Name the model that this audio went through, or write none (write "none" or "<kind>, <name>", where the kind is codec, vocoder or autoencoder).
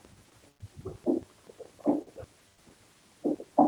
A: none